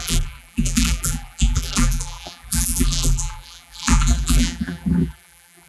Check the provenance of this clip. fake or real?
fake